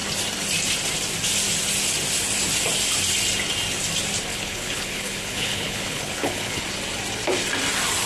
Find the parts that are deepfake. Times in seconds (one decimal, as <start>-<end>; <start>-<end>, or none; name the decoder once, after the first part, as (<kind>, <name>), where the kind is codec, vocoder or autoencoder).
4.3-6.6 (codec, HILCodec)